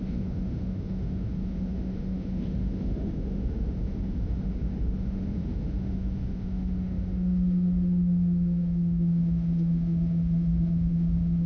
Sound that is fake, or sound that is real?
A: fake